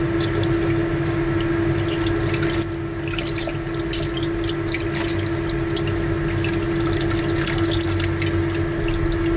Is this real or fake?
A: real